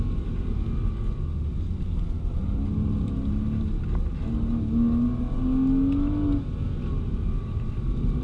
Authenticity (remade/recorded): recorded